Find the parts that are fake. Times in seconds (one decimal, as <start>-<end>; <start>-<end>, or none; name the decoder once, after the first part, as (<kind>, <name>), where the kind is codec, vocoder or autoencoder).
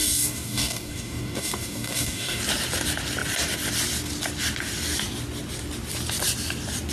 0.0-2.4 (codec, DAC)